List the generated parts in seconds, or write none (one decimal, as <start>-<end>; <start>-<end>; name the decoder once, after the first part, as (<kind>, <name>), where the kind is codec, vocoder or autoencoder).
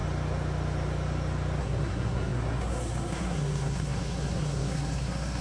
1.6-5.4 (codec, SNAC)